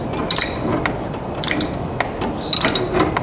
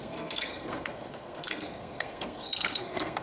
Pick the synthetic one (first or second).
second